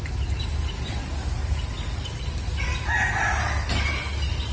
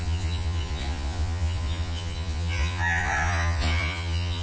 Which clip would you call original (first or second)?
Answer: first